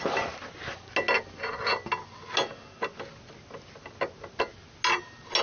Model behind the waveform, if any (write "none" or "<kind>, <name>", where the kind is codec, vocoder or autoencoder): none